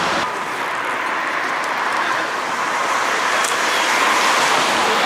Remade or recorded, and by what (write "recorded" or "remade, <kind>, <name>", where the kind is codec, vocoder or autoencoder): recorded